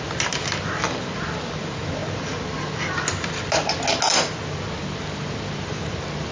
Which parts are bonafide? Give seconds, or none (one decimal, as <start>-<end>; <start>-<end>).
0.0-6.3